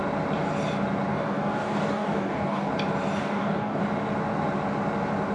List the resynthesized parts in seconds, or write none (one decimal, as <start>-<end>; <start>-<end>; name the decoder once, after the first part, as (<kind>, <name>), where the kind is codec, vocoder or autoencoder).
1.1-2.7 (codec, DAC); 3.2-3.8